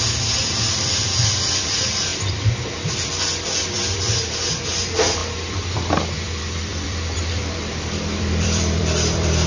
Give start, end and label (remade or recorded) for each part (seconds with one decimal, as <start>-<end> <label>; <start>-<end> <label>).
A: 0.0-5.2 remade; 5.2-5.9 recorded; 5.9-9.5 remade